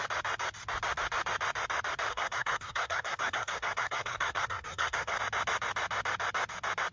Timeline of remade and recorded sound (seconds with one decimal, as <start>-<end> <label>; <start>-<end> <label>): 0.0-2.1 recorded; 2.1-5.2 remade; 5.2-6.9 recorded